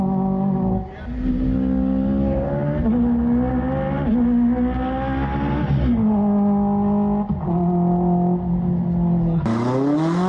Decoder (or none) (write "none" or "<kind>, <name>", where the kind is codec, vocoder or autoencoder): none